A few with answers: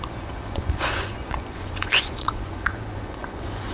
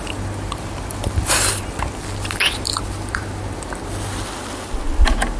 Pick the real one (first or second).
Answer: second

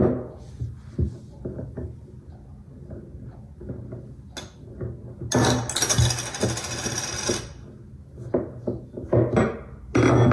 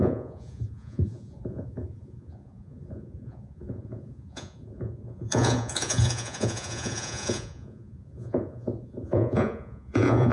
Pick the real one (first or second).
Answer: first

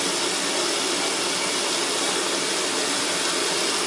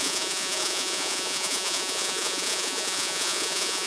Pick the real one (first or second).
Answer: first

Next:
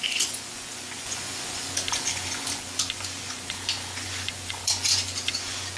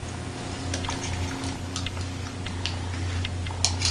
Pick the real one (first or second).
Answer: second